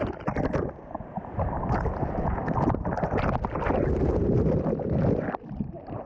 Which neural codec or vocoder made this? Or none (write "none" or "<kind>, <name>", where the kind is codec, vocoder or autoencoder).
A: none